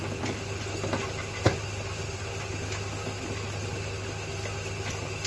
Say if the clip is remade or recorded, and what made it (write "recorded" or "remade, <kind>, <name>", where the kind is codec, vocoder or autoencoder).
recorded